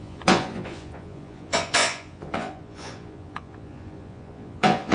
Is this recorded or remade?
remade